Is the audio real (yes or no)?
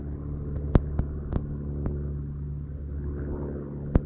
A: yes